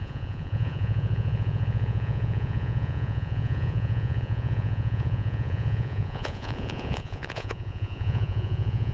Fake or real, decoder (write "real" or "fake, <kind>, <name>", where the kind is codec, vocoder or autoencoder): fake, vocoder, Vocos